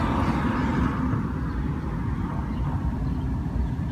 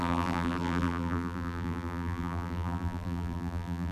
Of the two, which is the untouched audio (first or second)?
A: first